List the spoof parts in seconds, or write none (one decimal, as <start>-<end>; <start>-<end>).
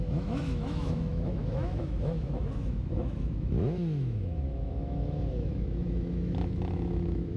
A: 0.0-7.4